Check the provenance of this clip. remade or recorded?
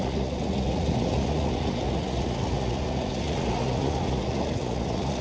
remade